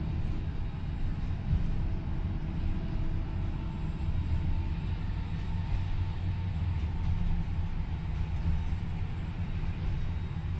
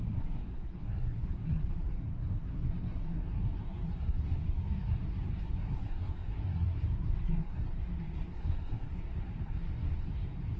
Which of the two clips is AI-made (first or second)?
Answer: second